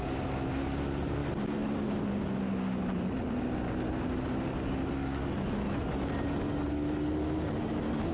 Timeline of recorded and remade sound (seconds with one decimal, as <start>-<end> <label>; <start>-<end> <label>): 0.0-8.1 recorded